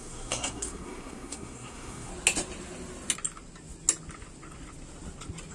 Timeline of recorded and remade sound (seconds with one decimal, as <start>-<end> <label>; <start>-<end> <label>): 0.0-2.1 remade; 2.1-5.5 recorded